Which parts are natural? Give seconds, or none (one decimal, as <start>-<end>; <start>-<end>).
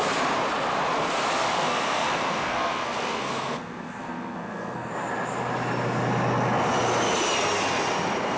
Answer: 0.0-1.4; 4.9-8.4